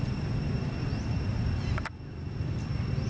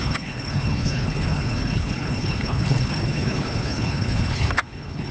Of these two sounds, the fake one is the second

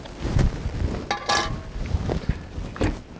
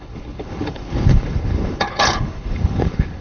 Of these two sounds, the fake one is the second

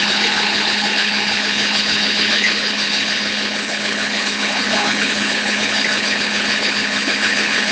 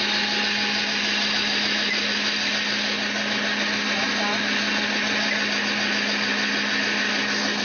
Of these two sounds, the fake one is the first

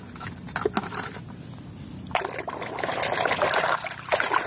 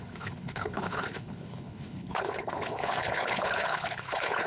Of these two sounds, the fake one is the second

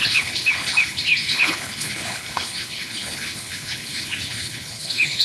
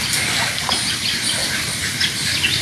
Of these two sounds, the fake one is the first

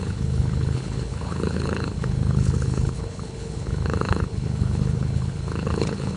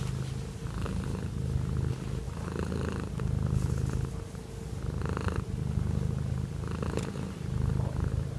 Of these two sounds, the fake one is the first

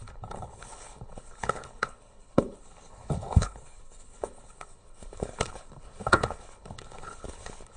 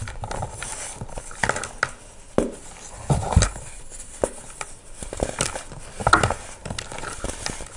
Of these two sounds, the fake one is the first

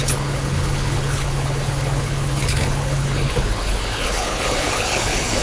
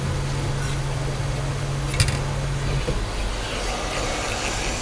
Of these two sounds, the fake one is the first